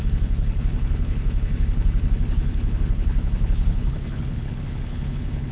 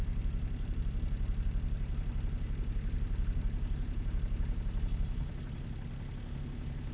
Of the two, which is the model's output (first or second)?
first